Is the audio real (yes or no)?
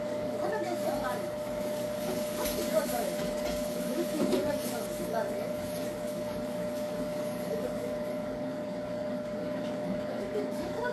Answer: no